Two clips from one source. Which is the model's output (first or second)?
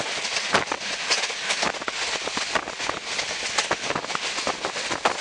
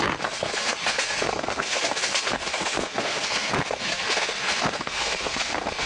second